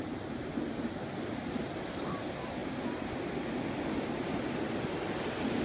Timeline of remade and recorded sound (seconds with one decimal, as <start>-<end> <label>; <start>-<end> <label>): 0.0-5.6 recorded